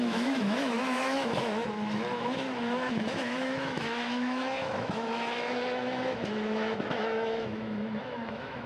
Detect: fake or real fake